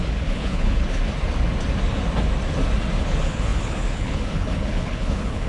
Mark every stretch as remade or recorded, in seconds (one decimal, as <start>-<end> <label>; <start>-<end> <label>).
0.0-1.0 remade; 1.0-3.0 recorded; 3.0-5.5 remade